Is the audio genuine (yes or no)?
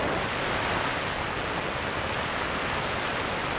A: yes